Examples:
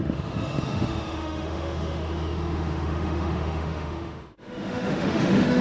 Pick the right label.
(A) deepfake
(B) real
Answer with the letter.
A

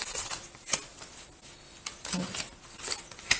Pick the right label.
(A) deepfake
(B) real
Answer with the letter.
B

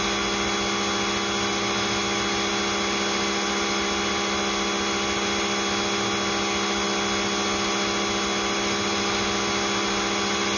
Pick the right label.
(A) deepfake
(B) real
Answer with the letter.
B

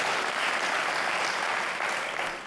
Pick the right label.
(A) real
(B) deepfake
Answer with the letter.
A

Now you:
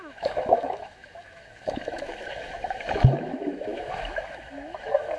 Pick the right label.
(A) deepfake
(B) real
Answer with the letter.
A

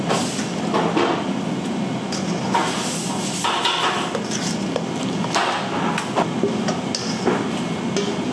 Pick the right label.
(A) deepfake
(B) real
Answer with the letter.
B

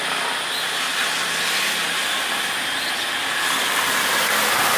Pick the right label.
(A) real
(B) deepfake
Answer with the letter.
A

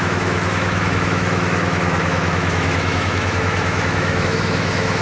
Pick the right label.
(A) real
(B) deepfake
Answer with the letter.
B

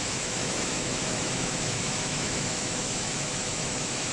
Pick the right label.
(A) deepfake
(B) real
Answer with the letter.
A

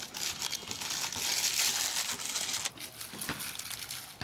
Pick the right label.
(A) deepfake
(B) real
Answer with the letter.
B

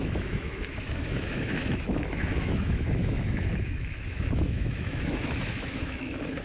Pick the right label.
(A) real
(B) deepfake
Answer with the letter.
B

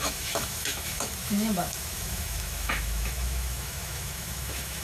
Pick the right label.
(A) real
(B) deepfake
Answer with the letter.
B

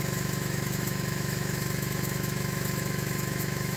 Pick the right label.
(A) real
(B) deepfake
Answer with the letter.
B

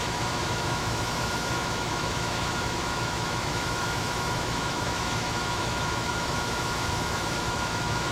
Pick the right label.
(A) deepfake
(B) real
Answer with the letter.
A